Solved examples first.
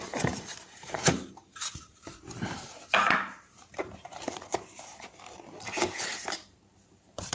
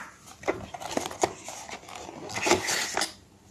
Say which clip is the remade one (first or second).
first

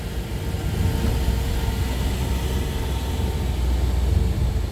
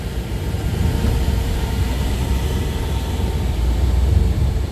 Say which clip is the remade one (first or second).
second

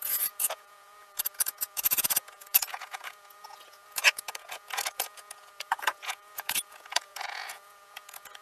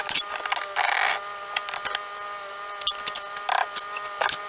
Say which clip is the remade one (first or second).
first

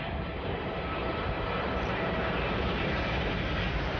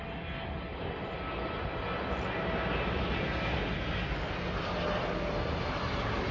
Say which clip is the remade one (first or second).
first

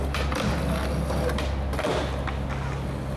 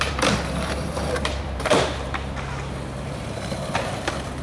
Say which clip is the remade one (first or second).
second